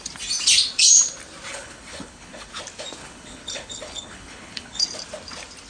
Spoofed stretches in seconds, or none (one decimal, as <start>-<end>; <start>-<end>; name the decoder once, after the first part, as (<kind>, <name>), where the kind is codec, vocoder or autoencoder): 1.5-2.5 (codec, HILCodec); 3.0-4.8